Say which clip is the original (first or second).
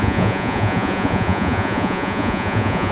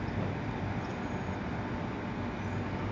second